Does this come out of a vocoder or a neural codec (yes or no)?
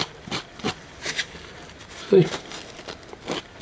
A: no